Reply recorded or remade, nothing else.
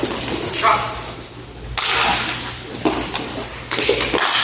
recorded